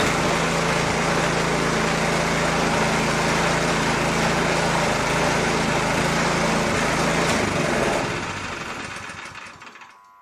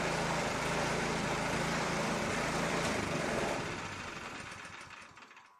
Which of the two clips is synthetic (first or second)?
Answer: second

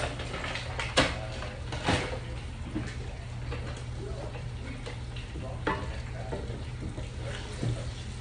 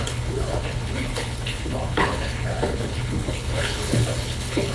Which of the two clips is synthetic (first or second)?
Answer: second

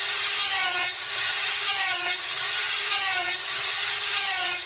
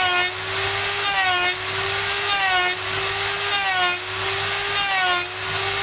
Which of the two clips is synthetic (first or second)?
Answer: first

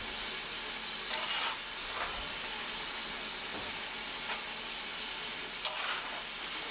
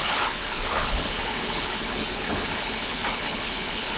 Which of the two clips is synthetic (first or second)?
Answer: second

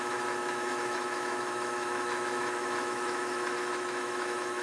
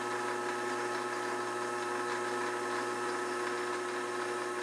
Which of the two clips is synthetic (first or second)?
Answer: first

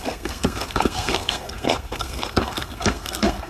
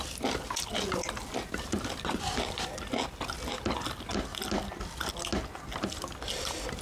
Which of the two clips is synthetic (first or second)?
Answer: first